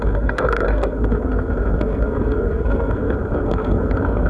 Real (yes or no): no